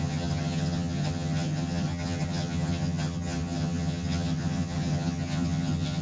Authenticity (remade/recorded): remade